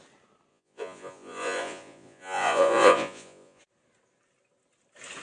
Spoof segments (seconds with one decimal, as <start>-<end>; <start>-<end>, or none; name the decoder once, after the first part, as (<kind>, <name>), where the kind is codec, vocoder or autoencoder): 0.5-3.6 (vocoder, Vocos)